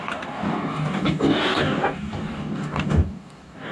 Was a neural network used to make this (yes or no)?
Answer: yes